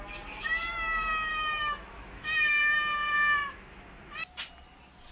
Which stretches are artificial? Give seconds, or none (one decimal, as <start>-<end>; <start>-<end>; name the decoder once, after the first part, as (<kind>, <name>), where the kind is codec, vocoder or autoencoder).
1.3-2.6 (autoencoder, DAC-VAE)